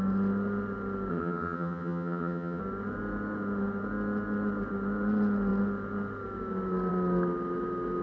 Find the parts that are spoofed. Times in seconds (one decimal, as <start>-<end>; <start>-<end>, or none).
1.1-2.6